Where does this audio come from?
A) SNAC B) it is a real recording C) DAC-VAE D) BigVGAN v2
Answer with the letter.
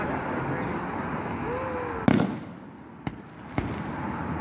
B